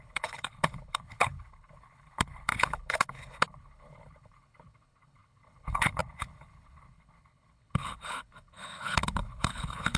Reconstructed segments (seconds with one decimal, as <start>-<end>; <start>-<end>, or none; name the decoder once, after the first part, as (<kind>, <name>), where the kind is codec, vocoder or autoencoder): 0.0-10.0 (codec, HILCodec)